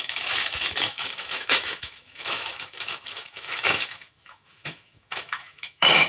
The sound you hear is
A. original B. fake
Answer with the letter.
B